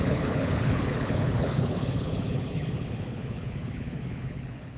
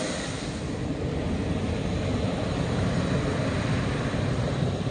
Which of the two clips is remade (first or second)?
first